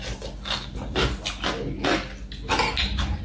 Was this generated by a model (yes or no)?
no